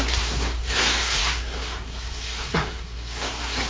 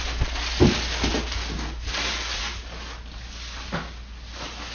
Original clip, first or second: second